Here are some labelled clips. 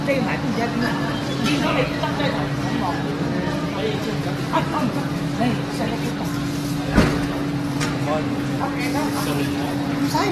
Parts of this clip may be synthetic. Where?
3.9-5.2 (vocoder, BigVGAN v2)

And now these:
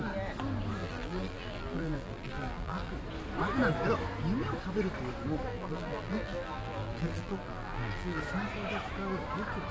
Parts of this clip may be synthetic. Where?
0.8-2.9 (vocoder, BigVGAN v2); 5.5-8.2

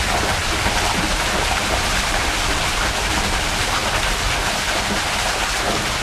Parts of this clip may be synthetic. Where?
1.1-2.3 (vocoder, BigVGAN v2)